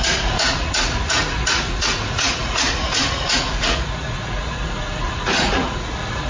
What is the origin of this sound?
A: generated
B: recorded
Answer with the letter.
A